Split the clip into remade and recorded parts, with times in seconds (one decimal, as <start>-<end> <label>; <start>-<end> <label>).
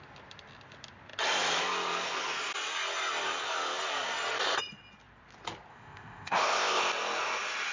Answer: 0.0-5.7 recorded; 5.7-6.8 remade; 6.8-7.7 recorded